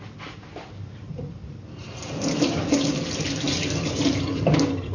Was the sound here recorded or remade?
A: remade